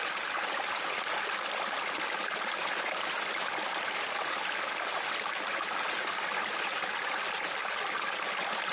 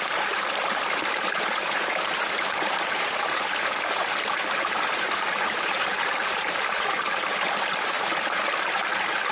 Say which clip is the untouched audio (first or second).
first